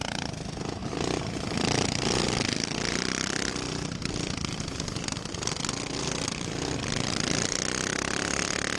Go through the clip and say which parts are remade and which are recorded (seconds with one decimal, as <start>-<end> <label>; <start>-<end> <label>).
0.0-8.8 recorded